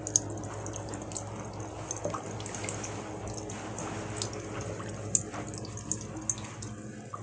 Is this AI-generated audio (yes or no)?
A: no